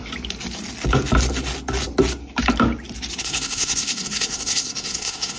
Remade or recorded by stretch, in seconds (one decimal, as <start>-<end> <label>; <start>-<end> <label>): 0.0-3.2 recorded; 3.2-5.4 remade